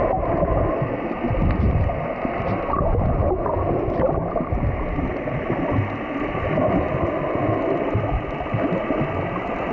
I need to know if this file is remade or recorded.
recorded